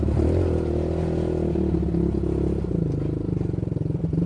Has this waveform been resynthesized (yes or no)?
no